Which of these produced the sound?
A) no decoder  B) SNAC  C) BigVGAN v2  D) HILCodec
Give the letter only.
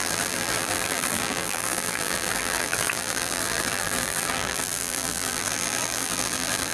C